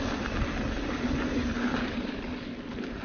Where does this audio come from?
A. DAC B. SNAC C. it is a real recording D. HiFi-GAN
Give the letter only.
C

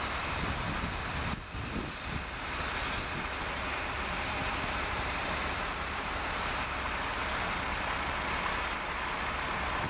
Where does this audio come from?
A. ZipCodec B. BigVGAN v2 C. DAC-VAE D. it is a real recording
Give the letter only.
D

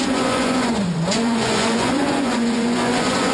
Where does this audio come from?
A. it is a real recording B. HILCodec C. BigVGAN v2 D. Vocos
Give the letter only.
D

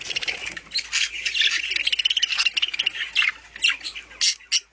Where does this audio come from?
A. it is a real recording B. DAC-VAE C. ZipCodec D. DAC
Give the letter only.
A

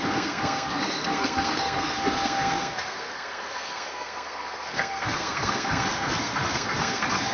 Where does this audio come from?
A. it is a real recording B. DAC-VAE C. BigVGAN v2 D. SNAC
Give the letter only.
D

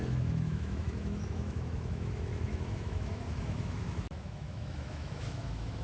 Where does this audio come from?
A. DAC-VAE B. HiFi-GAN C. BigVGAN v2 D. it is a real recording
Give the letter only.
A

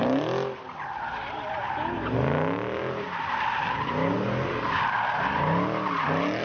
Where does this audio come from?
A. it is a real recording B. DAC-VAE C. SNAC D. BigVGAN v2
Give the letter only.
A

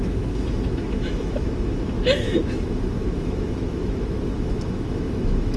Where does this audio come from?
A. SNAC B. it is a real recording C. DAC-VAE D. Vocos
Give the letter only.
C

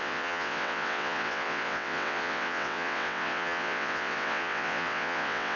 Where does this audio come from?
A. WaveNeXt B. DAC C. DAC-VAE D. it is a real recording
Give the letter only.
A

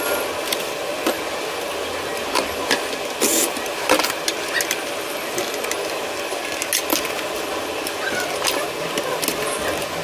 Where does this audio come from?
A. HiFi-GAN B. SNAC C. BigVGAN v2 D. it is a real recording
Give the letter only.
D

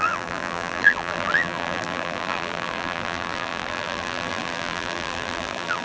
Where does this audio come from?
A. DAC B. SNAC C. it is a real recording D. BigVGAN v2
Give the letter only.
D